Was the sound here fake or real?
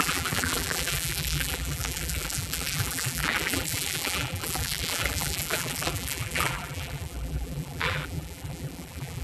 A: fake